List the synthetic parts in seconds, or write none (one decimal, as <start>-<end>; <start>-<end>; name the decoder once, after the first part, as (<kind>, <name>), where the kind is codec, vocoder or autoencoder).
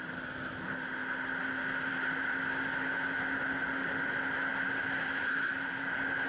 none